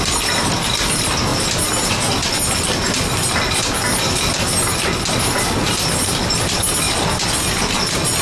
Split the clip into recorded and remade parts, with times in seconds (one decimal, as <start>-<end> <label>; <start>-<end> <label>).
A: 0.0-8.2 recorded